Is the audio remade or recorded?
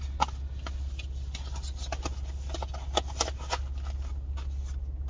recorded